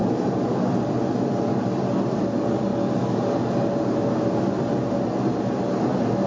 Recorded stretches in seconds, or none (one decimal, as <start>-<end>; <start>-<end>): 0.0-6.3